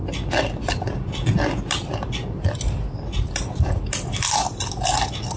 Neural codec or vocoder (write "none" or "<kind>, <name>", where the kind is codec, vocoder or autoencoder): none